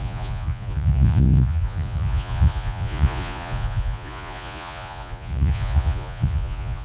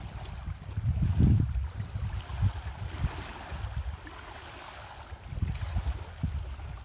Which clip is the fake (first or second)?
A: first